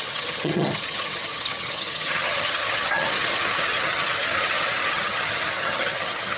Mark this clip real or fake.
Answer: fake